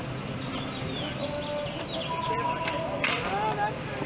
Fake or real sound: real